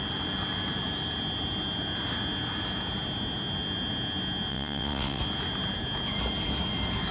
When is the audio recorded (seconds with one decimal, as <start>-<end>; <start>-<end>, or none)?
0.0-4.5; 5.2-7.1